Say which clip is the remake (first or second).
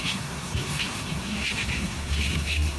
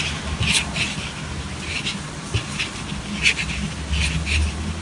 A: first